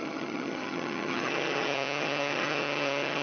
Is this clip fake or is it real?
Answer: fake